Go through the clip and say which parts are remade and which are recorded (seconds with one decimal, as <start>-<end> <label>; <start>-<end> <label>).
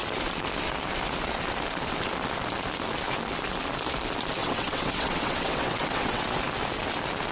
0.0-4.4 recorded; 4.4-6.4 remade; 6.4-7.3 recorded